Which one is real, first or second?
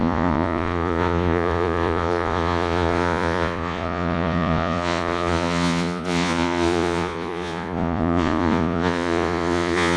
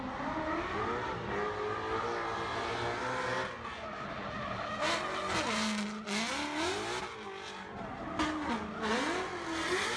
second